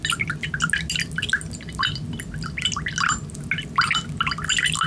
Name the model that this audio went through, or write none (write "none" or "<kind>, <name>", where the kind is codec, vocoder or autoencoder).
none